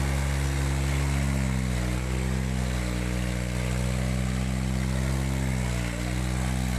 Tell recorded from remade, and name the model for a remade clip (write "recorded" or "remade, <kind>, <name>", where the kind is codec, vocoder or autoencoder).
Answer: recorded